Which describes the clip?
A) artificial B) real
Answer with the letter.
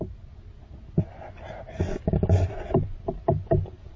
B